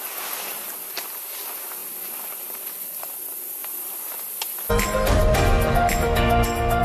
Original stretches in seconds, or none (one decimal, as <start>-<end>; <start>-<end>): 0.0-3.6; 4.7-6.8

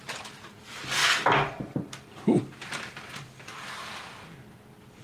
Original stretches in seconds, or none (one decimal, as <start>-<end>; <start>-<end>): none

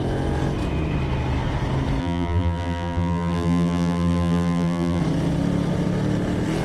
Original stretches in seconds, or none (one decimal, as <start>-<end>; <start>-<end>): 0.0-2.0; 5.0-6.6

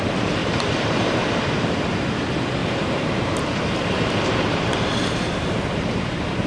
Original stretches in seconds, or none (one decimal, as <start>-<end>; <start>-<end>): 0.0-0.4; 1.5-2.6

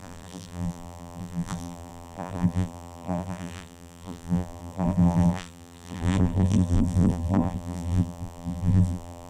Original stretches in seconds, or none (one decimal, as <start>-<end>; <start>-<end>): none

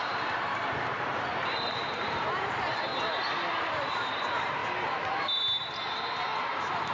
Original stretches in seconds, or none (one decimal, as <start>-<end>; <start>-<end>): 2.9-3.6; 4.6-6.4

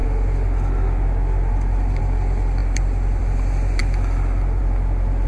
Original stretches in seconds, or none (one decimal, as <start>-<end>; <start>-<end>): 0.0-2.6; 3.2-5.3

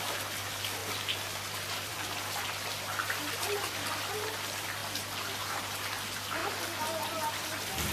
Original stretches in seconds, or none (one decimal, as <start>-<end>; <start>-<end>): 4.8-5.6